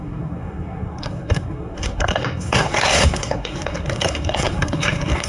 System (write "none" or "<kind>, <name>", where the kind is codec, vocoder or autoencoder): codec, SNAC